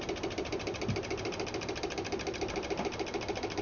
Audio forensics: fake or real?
real